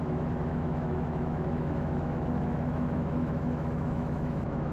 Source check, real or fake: fake